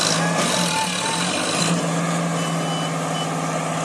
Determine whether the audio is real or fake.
real